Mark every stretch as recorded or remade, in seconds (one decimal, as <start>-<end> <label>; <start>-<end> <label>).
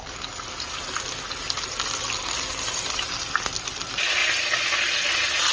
0.0-5.5 recorded